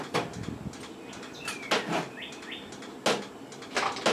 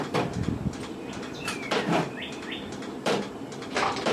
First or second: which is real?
first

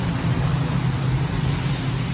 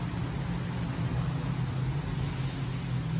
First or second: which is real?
second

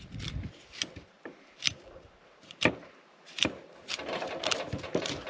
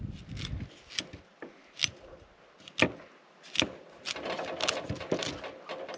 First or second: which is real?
second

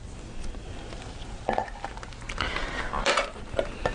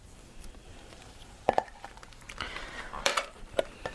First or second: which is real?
first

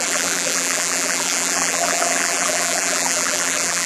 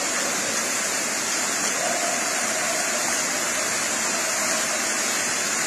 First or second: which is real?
second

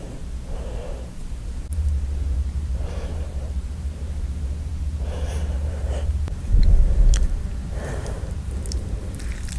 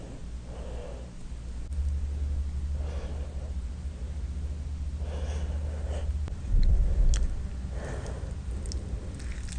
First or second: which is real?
second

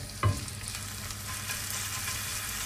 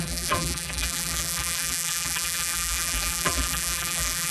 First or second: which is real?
first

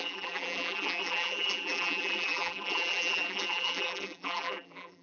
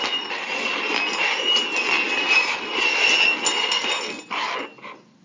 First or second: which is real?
second